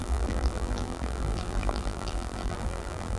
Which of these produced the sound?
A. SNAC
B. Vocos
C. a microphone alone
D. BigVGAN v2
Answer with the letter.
D